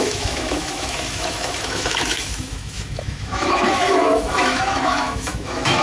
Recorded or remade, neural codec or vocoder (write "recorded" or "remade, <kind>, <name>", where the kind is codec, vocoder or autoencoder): remade, autoencoder, DAC-VAE